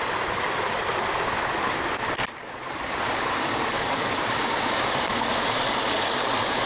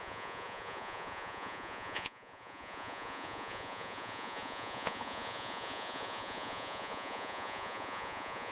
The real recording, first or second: first